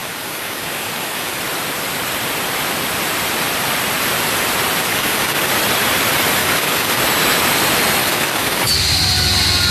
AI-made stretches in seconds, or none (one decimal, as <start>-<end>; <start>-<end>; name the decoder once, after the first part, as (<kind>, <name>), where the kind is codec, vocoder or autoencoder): 0.0-1.4 (codec, DAC); 4.8-5.5; 6.4-7.0; 8.0-8.7

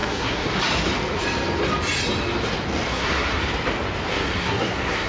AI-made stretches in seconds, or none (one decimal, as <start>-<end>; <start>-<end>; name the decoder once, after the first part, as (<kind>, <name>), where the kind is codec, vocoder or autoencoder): 0.0-0.5 (codec, SNAC); 2.9-3.4; 4.1-5.1

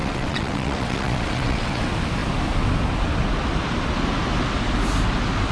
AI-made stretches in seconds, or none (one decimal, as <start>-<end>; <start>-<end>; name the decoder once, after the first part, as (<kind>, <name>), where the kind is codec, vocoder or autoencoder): 0.0-1.8 (vocoder, WaveNeXt)

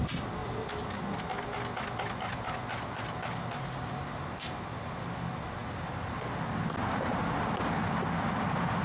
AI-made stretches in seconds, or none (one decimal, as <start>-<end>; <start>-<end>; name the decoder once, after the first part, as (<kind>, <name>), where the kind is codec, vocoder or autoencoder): none

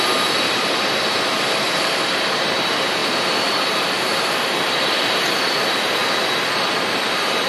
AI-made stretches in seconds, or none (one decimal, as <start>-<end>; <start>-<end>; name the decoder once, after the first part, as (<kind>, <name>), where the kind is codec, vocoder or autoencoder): 0.0-6.0 (vocoder, BigVGAN v2); 6.5-7.5